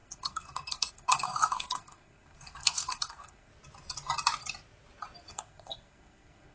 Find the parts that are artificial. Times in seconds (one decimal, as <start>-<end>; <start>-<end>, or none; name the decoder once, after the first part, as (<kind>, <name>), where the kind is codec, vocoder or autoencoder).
0.0-3.5 (codec, SNAC); 5.3-6.5